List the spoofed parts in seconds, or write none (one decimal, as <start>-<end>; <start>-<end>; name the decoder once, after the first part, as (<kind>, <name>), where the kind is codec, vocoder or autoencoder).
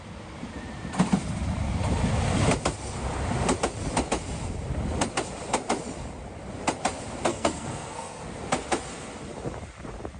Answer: 7.3-8.2 (codec, SNAC)